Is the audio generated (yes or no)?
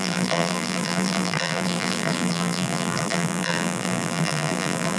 yes